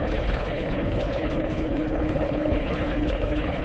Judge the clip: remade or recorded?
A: remade